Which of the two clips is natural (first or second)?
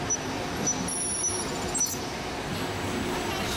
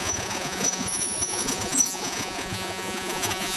first